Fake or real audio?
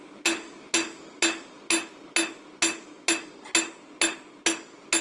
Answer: real